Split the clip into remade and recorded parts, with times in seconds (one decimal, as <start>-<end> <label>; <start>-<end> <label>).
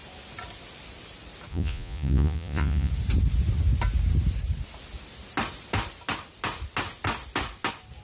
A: 0.0-1.5 recorded; 1.5-2.9 remade; 2.9-8.0 recorded